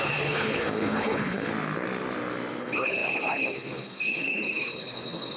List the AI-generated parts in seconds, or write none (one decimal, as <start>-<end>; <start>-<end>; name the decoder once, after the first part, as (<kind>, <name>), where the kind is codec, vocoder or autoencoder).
0.0-1.5 (codec, HILCodec); 2.6-5.4